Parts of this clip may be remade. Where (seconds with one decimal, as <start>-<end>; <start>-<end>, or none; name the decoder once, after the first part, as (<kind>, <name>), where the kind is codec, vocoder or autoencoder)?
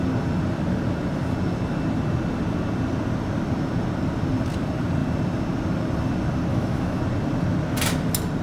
6.5-7.0 (autoencoder, DAC-VAE)